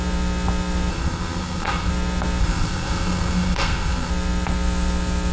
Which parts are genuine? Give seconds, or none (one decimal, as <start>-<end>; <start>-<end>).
0.0-0.9; 1.9-2.4; 4.1-5.3